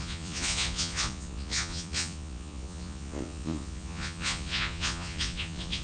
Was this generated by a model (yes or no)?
yes